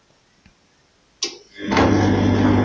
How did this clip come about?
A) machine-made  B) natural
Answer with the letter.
B